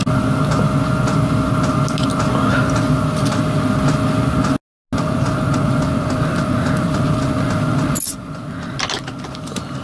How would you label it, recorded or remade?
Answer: recorded